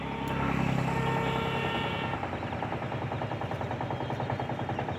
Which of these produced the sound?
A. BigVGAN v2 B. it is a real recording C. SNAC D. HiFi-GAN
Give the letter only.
B